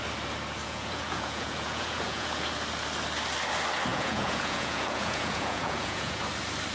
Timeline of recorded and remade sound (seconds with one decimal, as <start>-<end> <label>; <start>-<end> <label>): 0.0-0.6 recorded; 0.6-2.5 remade; 2.5-3.9 recorded; 3.9-6.2 remade; 6.2-6.7 recorded